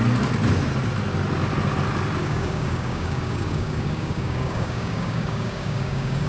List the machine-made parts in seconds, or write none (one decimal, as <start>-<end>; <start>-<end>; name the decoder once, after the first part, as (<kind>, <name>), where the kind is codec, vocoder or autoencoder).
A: 2.2-6.3 (codec, DAC)